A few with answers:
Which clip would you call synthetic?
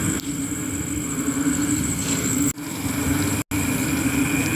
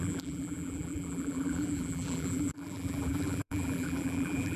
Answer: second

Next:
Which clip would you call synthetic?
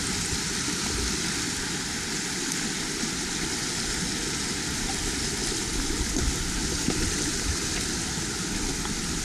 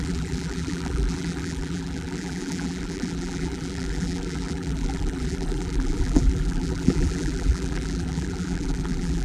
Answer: second